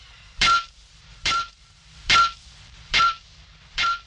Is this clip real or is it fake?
fake